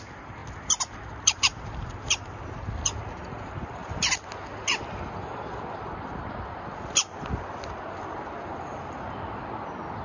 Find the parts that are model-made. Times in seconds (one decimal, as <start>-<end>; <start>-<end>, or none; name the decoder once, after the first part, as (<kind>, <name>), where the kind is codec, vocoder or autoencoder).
0.0-0.4 (vocoder, BigVGAN v2); 0.9-3.8; 8.0-10.0